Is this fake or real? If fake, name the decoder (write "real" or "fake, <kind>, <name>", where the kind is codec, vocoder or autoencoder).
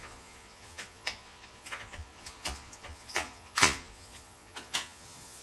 fake, vocoder, Vocos